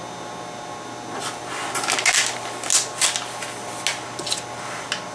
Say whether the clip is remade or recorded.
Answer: recorded